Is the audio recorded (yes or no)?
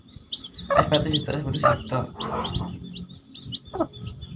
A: yes